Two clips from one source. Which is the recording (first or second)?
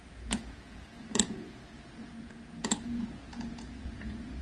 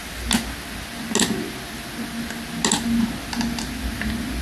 second